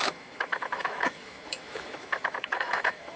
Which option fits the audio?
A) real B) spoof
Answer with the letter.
B